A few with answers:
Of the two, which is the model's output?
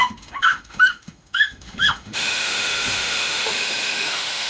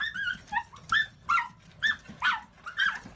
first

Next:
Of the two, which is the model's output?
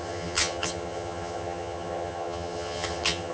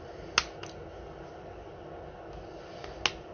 first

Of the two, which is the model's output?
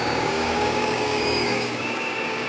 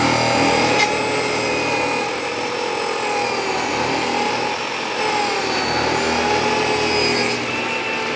first